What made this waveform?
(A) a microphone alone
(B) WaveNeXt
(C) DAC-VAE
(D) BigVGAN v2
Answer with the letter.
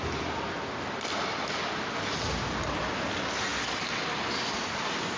A